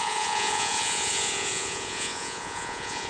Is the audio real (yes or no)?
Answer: no